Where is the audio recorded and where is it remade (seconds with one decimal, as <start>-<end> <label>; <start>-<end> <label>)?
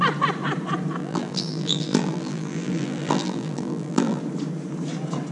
0.0-1.0 recorded; 1.0-4.2 remade; 4.2-5.3 recorded